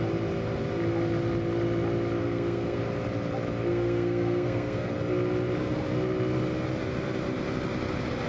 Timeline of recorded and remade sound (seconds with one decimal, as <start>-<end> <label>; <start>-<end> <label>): 0.0-2.2 recorded; 2.2-2.8 remade; 2.8-3.7 recorded; 3.7-4.9 remade; 4.9-8.3 recorded